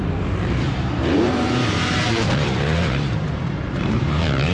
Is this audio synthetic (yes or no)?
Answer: yes